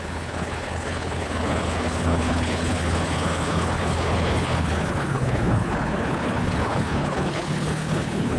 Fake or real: fake